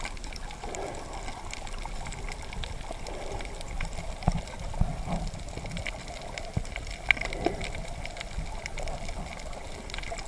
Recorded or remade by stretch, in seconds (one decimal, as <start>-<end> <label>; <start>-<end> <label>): 0.0-10.3 recorded